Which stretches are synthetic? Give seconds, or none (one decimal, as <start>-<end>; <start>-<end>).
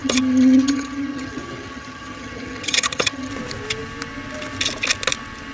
0.0-3.3